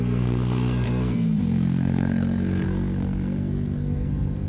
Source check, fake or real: fake